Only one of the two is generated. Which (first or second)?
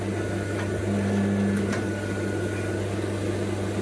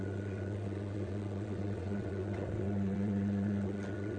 second